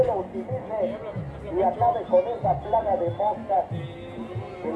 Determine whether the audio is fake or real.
real